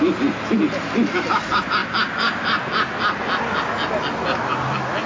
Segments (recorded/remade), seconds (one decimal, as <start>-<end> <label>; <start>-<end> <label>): 0.0-5.1 recorded